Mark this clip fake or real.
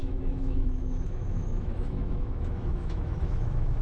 fake